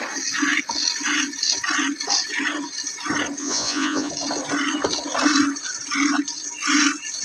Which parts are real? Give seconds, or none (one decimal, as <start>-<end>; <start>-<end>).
0.0-3.4; 4.1-7.2